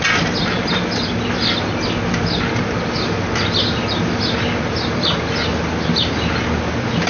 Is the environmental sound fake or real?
real